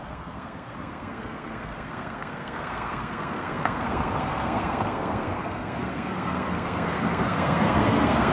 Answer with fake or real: fake